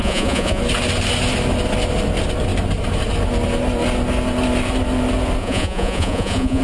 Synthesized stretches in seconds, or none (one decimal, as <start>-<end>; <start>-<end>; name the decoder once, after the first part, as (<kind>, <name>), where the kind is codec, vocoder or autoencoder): 0.0-0.6 (vocoder, Vocos); 5.4-6.6